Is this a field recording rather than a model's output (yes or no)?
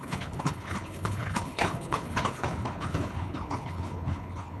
no